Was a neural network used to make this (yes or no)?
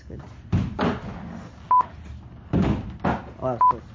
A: no